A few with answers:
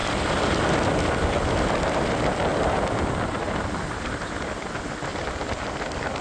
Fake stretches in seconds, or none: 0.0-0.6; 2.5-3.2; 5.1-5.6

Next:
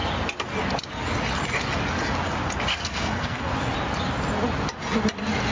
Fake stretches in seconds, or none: 2.7-3.5

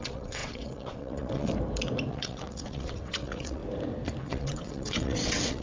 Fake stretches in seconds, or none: 0.0-1.5; 2.1-3.6; 4.2-5.6